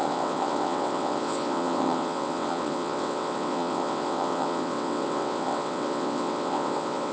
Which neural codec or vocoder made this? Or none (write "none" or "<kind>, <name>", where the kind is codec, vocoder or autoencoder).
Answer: vocoder, WaveNeXt